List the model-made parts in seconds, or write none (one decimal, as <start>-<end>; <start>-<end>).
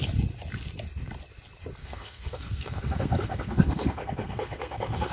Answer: 1.8-5.1